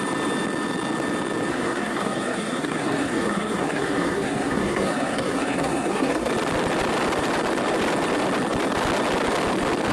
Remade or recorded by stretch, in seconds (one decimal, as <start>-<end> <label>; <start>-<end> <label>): 0.0-1.5 recorded; 1.5-6.3 remade; 6.3-9.9 recorded

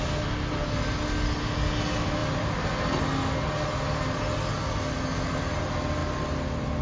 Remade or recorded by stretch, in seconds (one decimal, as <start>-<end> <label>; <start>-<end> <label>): 0.0-6.8 recorded

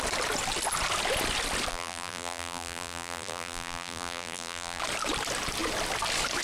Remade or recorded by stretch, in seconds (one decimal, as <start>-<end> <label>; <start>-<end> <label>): 0.0-1.7 recorded; 1.7-4.8 remade; 4.8-6.4 recorded

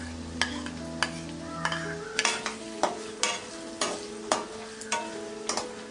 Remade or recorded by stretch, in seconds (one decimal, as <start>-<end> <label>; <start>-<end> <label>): 0.0-5.9 recorded

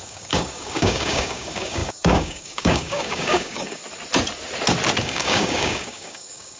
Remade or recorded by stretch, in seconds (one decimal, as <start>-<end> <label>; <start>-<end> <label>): 0.0-3.8 remade; 3.8-5.0 recorded; 5.0-6.6 remade

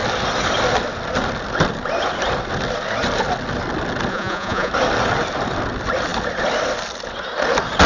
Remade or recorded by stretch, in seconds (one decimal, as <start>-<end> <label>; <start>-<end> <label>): 0.0-4.1 recorded; 4.1-4.7 remade; 4.7-7.9 recorded

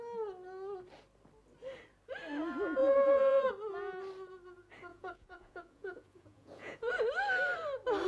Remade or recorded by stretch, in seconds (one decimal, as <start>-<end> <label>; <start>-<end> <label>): 0.0-2.8 recorded; 2.8-3.5 remade; 3.5-4.9 recorded; 4.9-6.9 remade; 6.9-8.1 recorded

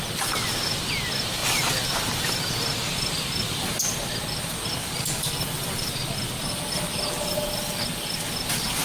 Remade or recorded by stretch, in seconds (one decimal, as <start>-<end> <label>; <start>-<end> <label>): 0.0-1.4 recorded; 1.4-1.9 remade; 1.9-8.8 recorded